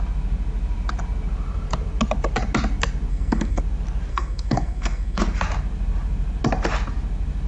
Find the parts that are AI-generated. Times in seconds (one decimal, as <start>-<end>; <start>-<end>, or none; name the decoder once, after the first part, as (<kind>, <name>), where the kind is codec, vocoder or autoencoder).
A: 3.1-3.6 (codec, SNAC); 4.1-5.2